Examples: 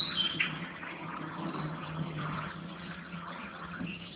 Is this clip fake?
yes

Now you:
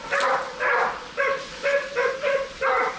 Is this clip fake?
no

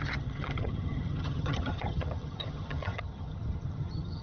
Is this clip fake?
yes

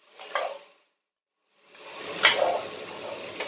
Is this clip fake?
no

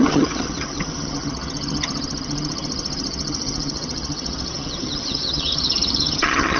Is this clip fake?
yes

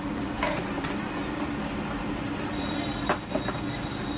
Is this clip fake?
no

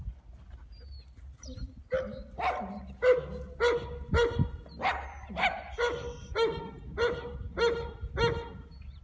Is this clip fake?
no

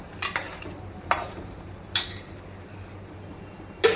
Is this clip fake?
no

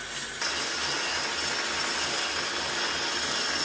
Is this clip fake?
no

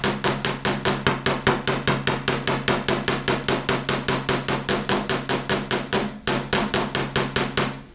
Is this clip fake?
no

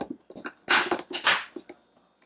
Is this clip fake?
no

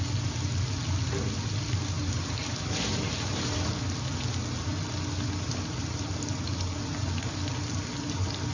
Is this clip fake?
no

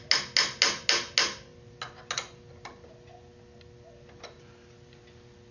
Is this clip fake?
no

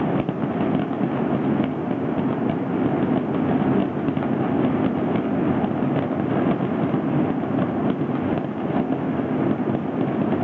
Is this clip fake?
no